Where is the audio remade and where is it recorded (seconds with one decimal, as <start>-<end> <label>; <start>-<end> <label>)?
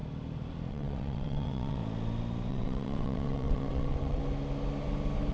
0.0-0.7 recorded; 0.7-1.8 remade; 1.8-2.5 recorded; 2.5-4.2 remade; 4.2-5.3 recorded